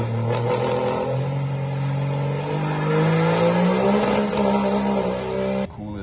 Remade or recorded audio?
recorded